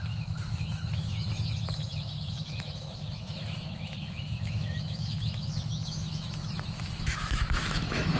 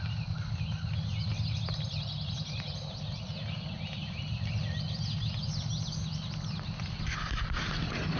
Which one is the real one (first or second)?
second